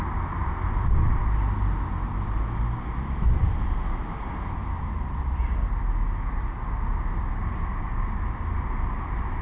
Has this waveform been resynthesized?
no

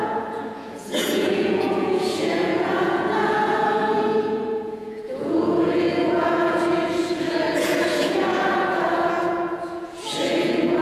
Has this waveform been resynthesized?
yes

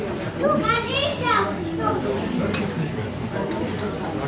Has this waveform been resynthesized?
no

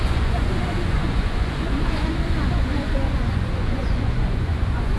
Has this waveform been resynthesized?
yes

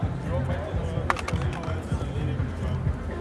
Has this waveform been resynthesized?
no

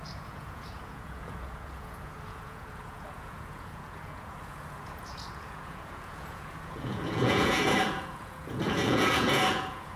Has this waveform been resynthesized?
yes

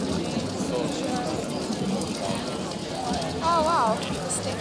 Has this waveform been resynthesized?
no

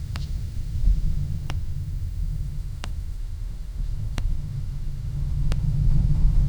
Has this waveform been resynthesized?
yes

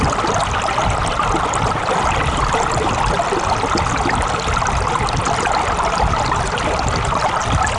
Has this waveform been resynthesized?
no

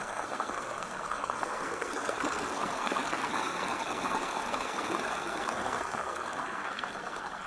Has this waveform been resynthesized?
yes